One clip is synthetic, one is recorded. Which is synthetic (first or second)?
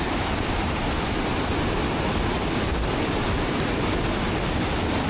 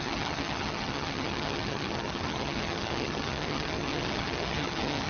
second